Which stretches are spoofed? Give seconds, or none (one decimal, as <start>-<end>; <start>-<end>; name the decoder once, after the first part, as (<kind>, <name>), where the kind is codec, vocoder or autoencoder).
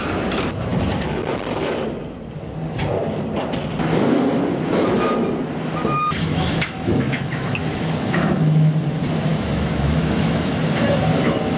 6.3-8.8 (autoencoder, DAC-VAE); 9.3-10.6